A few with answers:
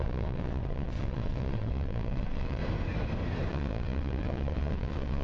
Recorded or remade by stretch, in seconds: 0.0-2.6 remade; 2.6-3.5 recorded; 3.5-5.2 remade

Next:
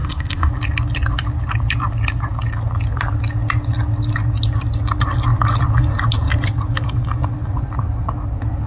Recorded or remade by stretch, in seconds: 0.0-0.5 remade; 0.5-8.7 recorded

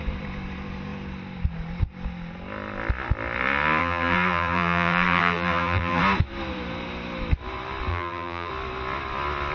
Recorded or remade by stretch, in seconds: 0.0-3.8 recorded; 3.8-6.0 remade; 6.0-7.9 recorded; 7.9-8.5 remade; 8.5-9.5 recorded

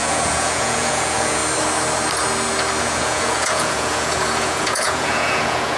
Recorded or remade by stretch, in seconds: 0.0-1.4 remade; 1.4-2.8 recorded; 2.8-5.8 remade

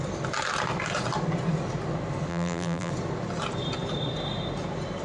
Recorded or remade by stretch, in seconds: 0.0-2.3 recorded; 2.3-2.9 remade; 2.9-5.0 recorded

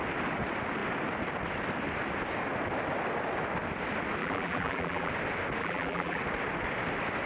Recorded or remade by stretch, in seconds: 0.0-4.2 recorded; 4.2-5.1 remade; 5.1-5.6 recorded; 5.6-6.2 remade; 6.2-7.3 recorded